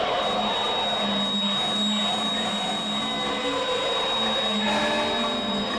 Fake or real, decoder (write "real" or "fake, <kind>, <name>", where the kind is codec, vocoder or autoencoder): real